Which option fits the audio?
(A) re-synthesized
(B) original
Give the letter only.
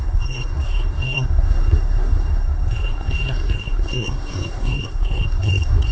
A